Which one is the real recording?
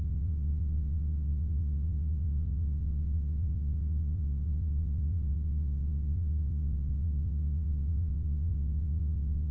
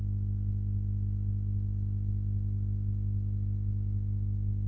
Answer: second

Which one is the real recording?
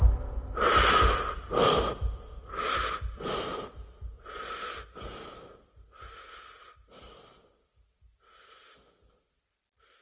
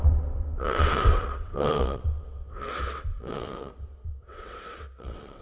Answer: first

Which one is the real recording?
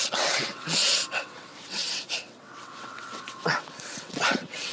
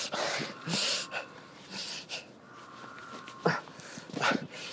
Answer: second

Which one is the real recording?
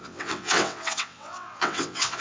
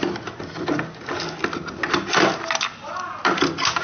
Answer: second